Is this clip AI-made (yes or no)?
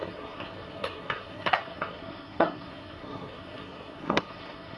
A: yes